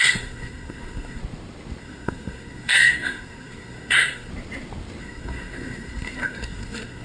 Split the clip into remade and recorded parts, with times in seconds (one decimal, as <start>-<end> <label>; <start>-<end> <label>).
0.0-1.2 remade; 1.2-1.8 recorded; 1.8-4.3 remade; 4.3-5.0 recorded; 5.0-7.0 remade